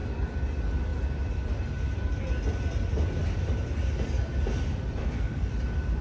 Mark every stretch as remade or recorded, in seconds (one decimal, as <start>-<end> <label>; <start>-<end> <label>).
0.0-5.0 recorded; 5.0-5.5 remade; 5.5-6.0 recorded